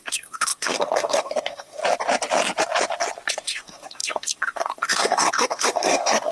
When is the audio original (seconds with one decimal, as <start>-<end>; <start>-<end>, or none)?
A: 1.8-3.3